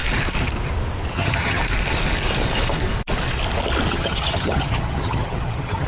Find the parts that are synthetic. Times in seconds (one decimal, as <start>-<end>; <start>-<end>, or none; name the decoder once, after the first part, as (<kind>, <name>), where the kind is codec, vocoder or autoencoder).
1.1-1.6 (vocoder, HiFi-GAN); 3.9-5.9